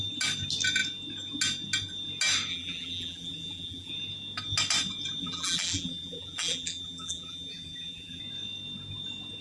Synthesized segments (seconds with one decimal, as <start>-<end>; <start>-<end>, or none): 2.5-3.9; 5.2-8.2